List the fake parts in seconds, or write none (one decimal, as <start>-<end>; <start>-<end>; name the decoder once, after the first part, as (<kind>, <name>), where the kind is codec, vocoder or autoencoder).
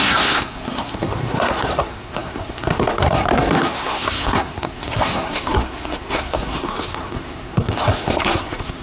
0.0-8.8 (codec, SNAC)